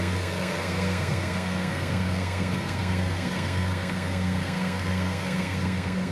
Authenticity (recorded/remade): remade